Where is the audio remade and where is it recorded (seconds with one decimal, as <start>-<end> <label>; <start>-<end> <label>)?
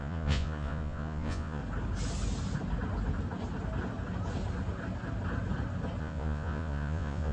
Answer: 0.0-1.6 remade; 1.6-6.0 recorded; 6.0-7.3 remade